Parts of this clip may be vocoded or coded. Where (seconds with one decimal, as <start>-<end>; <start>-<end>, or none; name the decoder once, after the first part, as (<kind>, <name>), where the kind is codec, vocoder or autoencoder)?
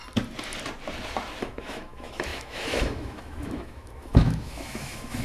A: 1.4-5.2 (autoencoder, DAC-VAE)